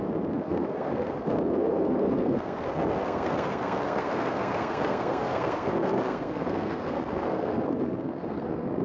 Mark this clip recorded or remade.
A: remade